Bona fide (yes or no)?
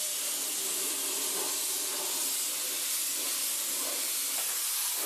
yes